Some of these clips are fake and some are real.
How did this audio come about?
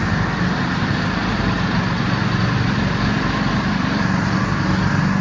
real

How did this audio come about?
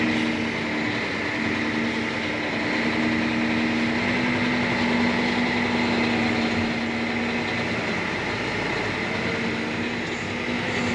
real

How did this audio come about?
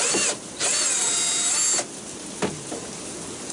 real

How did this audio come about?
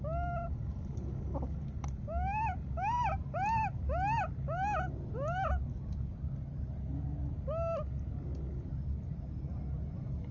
real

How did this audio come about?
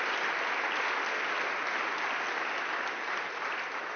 real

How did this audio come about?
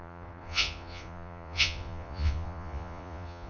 fake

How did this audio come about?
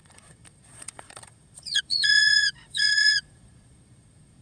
fake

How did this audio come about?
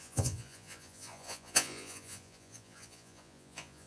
fake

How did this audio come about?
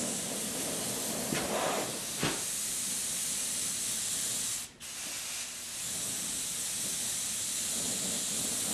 real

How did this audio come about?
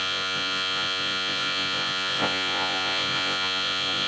fake